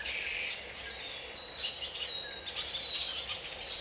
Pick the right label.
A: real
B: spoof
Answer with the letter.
A